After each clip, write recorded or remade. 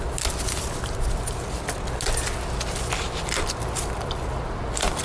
recorded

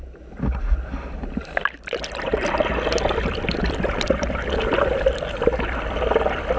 recorded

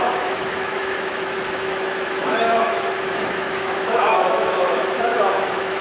remade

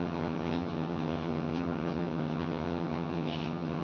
remade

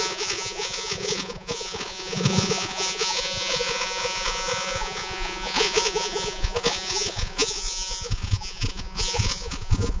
remade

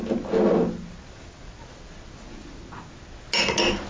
recorded